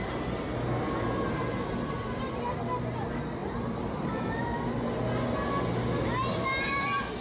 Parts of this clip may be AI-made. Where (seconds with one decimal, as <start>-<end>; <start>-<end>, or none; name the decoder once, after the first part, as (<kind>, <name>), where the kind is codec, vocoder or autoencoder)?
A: 2.0-2.6 (vocoder, BigVGAN v2); 3.4-4.4